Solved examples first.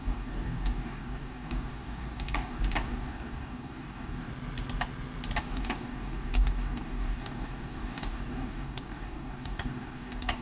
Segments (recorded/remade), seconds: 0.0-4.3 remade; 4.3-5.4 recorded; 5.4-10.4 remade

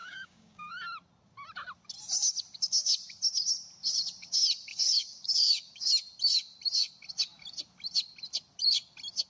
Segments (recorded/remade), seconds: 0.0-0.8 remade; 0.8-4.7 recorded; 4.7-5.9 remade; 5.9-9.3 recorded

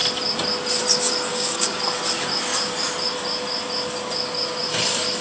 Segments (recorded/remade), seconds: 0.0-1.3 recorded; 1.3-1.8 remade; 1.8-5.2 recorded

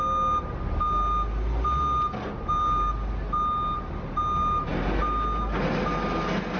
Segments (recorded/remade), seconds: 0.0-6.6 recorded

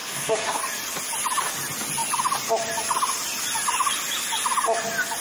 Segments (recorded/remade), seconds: 0.0-0.6 remade; 0.6-5.2 recorded

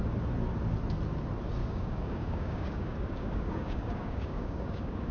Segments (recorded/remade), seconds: 0.0-1.6 recorded; 1.6-5.1 remade

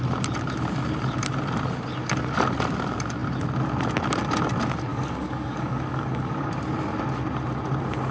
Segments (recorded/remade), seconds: 0.0-4.9 recorded; 4.9-6.5 remade; 6.5-8.1 recorded